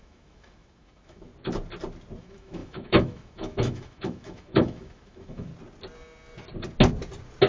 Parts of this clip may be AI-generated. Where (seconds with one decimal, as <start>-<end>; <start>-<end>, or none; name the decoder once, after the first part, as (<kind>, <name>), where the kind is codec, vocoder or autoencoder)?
0.0-1.3 (autoencoder, DAC-VAE); 2.2-5.5